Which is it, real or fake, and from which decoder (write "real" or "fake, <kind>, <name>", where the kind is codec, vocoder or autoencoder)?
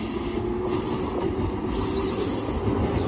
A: real